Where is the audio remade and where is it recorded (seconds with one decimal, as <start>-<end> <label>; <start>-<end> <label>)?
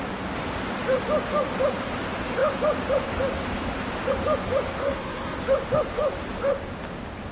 0.0-4.8 recorded; 4.8-5.4 remade; 5.4-7.3 recorded